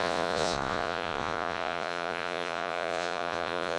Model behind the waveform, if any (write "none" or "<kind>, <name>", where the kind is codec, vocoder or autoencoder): vocoder, Vocos